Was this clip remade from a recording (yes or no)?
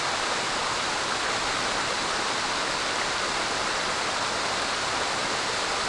no